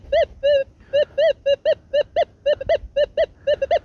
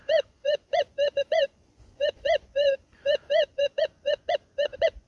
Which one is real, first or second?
first